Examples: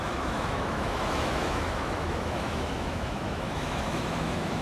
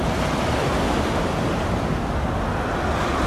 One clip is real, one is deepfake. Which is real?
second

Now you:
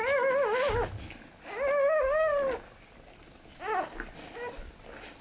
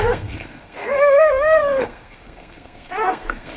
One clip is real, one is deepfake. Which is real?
first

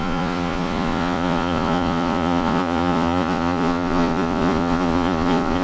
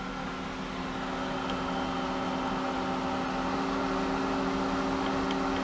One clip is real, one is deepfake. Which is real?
second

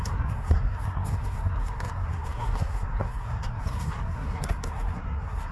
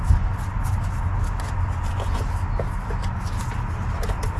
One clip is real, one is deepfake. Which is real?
second